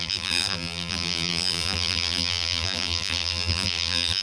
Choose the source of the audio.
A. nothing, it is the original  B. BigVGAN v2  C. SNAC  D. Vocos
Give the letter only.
B